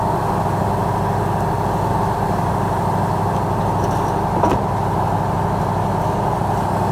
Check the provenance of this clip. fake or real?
real